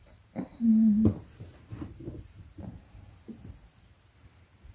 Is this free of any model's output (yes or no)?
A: no